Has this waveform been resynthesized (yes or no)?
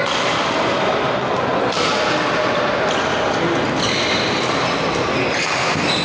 no